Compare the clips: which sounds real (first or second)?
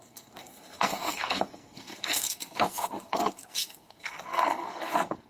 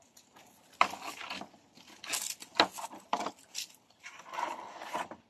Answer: second